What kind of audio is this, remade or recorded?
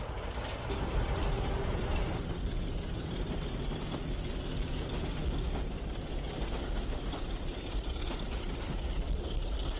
recorded